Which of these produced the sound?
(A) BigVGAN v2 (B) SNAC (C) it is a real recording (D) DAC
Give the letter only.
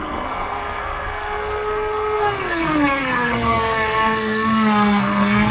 B